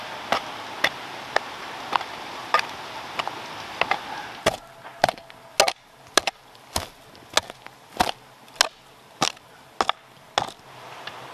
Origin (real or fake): real